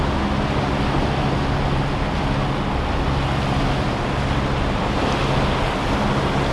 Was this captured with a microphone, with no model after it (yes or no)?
yes